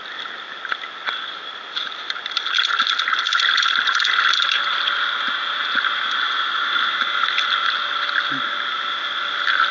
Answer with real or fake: real